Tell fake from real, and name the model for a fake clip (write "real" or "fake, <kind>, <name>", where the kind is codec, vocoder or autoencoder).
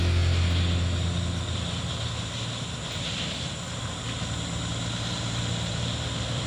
real